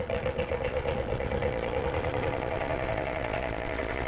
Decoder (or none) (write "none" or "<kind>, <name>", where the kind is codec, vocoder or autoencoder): vocoder, Vocos